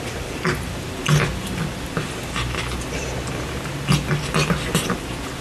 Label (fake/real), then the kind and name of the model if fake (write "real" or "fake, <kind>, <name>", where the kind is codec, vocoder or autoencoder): real